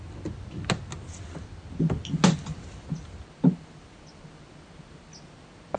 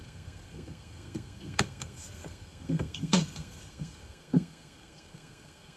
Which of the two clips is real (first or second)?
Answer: first